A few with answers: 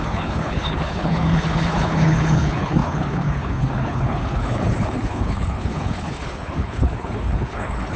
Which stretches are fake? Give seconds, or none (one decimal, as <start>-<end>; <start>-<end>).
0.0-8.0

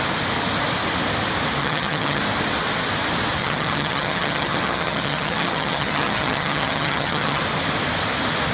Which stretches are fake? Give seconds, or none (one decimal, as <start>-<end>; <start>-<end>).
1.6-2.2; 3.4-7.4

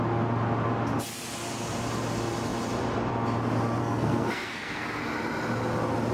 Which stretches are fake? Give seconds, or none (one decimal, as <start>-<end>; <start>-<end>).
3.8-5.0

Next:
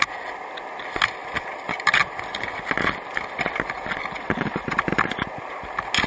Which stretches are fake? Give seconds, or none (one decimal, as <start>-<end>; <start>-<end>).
none

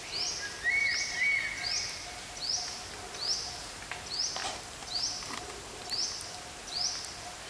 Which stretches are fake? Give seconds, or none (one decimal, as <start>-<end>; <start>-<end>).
none

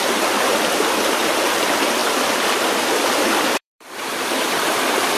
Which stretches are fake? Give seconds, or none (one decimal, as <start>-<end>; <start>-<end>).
2.0-5.2

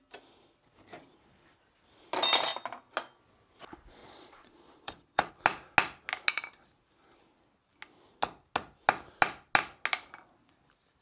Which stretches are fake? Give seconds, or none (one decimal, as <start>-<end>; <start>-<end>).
4.0-5.3